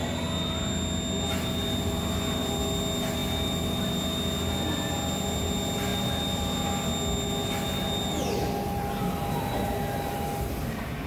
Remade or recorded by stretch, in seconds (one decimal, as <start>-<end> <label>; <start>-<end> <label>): 0.0-11.1 recorded